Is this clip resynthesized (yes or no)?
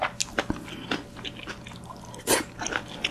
no